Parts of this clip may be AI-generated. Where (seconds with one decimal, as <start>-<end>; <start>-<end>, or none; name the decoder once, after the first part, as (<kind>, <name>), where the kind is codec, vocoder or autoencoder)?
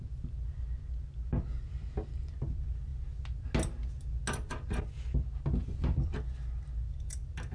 none